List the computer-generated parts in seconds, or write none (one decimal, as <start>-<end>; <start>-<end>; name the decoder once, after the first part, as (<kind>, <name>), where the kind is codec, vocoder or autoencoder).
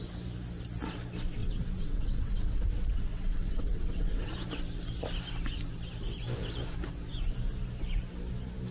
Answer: 1.4-4.3 (vocoder, WaveNeXt)